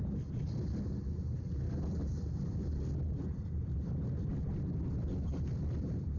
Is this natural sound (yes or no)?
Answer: yes